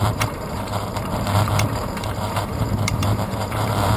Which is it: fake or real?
fake